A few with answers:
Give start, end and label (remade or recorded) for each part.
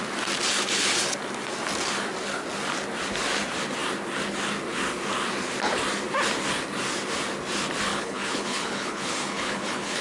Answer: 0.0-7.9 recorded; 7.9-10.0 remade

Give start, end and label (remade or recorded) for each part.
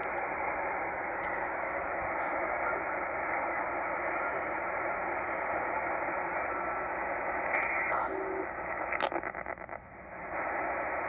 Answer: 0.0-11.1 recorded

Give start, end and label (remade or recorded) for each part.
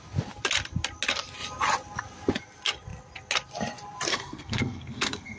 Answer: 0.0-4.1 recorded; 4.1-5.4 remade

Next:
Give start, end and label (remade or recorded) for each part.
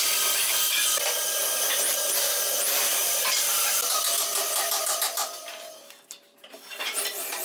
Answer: 0.0-7.4 recorded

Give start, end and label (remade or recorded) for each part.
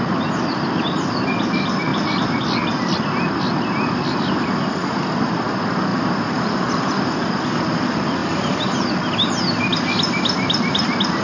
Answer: 0.0-1.9 recorded; 1.9-2.4 remade; 2.4-5.9 recorded; 5.9-7.8 remade; 7.8-8.2 recorded; 8.2-8.9 remade; 8.9-11.2 recorded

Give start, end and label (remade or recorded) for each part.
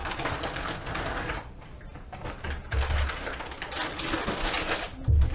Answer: 0.0-5.3 recorded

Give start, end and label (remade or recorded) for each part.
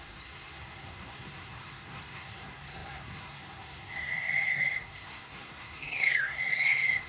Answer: 0.0-7.1 remade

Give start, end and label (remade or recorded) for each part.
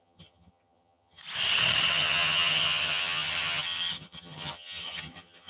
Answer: 0.0-1.2 remade; 1.2-1.9 recorded; 1.9-5.5 remade